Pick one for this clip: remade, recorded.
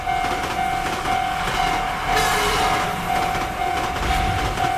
recorded